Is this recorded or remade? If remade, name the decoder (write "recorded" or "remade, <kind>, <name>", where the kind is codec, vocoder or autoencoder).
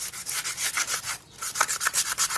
recorded